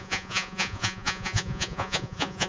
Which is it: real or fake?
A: fake